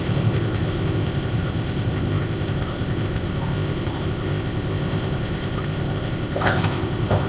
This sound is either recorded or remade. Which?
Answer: remade